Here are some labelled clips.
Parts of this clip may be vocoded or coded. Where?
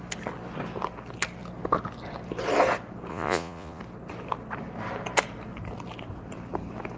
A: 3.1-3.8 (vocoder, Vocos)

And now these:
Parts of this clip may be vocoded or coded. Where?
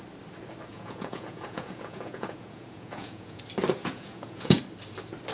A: 0.7-3.4 (vocoder, Vocos); 3.8-4.6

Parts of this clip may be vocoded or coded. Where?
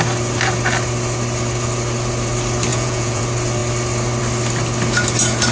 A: 2.7-3.2 (vocoder, Vocos)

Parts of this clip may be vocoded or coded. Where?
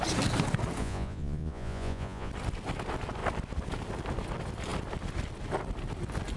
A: 0.8-2.3 (vocoder, Vocos)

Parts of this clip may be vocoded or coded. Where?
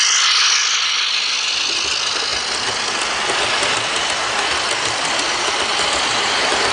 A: none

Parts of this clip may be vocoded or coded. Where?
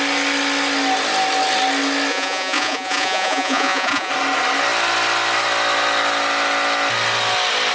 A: 2.1-4.1 (vocoder, Vocos)